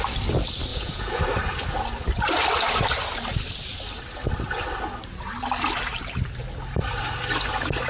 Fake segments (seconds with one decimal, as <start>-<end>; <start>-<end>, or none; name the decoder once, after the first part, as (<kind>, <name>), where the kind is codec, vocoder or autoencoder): 0.7-1.2 (vocoder, Vocos)